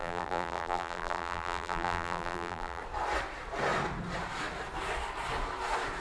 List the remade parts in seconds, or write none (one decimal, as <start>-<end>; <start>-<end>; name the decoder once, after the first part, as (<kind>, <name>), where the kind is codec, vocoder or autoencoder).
0.0-2.8 (vocoder, BigVGAN v2)